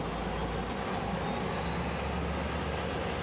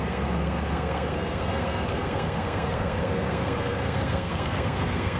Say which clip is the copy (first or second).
second